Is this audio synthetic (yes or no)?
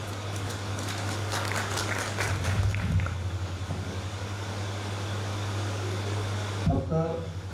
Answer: yes